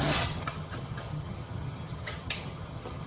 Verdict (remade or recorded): remade